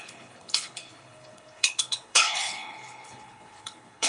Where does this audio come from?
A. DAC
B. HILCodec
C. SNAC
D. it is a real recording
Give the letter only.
B